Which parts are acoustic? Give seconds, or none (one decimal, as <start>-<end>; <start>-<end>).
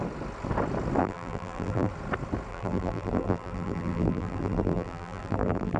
0.0-1.0; 1.9-2.5